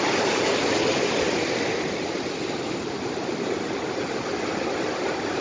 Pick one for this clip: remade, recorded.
recorded